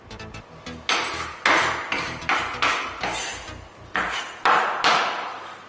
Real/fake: real